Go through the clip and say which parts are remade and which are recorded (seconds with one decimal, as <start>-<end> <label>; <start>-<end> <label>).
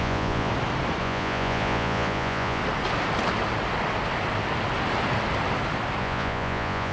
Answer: 0.0-0.5 remade; 0.5-1.0 recorded; 1.0-2.6 remade; 2.6-6.0 recorded; 6.0-6.9 remade